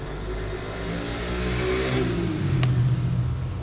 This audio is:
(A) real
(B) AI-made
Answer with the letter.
A